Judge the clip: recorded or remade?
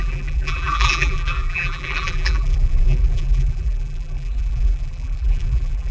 remade